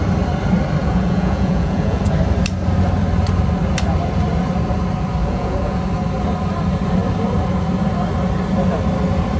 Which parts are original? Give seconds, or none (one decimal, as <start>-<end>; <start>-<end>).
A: 0.0-0.8; 2.0-5.2; 5.8-9.4